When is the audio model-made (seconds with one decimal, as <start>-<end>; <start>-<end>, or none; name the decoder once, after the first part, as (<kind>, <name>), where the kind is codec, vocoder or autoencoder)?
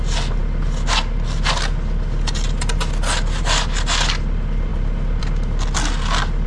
none